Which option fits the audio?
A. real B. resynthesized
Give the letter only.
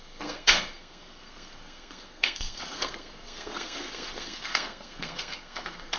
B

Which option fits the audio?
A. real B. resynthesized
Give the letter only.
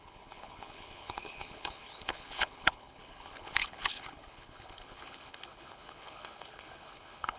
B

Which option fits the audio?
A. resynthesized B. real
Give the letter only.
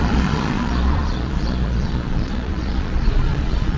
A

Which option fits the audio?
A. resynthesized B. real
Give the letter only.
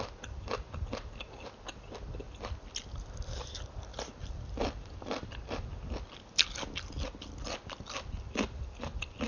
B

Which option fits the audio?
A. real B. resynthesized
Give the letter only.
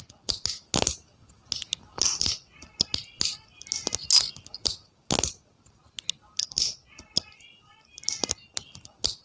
A